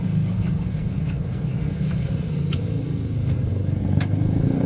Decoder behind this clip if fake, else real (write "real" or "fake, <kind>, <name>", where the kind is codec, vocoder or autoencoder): fake, codec, SNAC